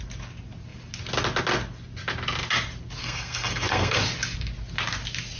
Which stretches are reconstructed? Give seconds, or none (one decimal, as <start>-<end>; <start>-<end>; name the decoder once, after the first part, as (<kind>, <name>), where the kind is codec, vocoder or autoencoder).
3.0-4.0 (codec, SNAC)